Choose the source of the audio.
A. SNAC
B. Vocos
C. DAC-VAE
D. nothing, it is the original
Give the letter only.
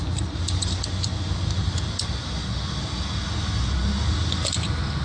D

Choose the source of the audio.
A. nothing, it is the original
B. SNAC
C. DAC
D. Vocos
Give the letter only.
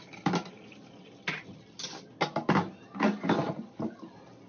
A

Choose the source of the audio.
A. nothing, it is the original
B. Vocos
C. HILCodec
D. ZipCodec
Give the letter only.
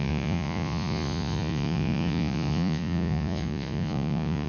B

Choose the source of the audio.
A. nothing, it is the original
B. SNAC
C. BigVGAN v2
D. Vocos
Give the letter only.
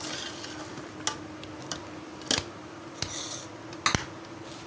A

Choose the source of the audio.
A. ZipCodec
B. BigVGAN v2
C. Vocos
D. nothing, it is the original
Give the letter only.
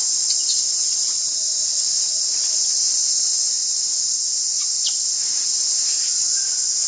D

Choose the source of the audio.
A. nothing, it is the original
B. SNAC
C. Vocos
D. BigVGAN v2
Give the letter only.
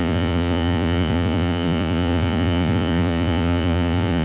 C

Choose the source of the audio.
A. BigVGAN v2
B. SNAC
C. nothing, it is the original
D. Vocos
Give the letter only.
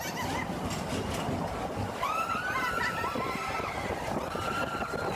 C